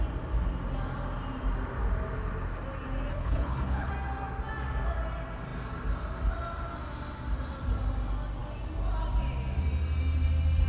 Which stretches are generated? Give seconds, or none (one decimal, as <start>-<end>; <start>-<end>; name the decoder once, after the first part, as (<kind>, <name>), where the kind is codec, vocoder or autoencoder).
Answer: 3.1-3.9 (codec, HILCodec)